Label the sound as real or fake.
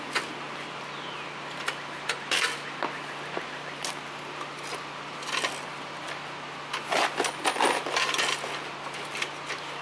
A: real